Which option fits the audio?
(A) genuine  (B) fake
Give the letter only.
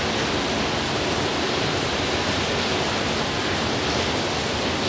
A